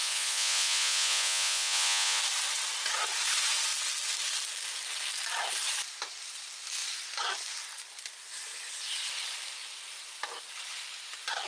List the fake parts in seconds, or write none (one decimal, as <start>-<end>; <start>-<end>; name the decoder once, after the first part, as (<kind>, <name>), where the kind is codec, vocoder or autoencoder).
0.0-2.2 (vocoder, Vocos)